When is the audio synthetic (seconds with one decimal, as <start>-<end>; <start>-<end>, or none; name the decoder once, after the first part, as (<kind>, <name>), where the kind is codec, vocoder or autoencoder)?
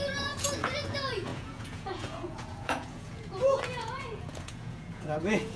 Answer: 0.0-5.6 (vocoder, Vocos)